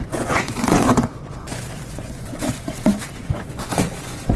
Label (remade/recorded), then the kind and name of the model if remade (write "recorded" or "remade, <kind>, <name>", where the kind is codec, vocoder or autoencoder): remade, vocoder, Vocos